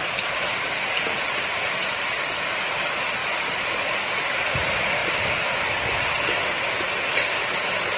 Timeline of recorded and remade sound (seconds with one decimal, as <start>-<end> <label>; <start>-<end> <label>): 0.0-8.0 recorded